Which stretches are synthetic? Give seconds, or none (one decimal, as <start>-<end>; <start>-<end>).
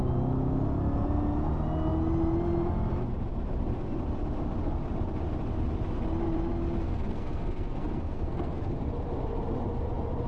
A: 6.8-8.7